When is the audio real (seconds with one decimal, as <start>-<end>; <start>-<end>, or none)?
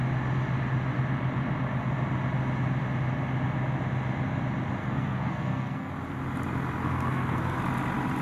0.0-4.8; 5.9-6.8; 7.6-8.2